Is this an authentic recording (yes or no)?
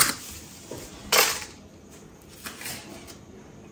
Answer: yes